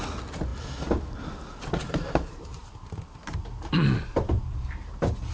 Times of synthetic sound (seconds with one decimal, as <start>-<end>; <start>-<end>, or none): none